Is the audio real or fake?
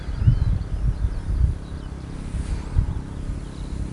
real